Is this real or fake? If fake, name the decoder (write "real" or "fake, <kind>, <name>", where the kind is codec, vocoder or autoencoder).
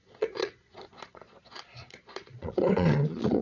fake, vocoder, Vocos